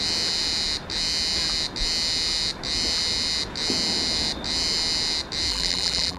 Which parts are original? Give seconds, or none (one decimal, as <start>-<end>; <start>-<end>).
0.0-5.5